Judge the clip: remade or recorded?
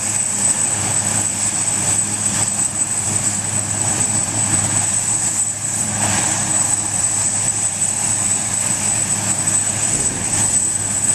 remade